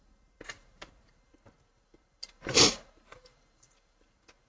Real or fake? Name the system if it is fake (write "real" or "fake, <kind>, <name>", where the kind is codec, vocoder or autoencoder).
real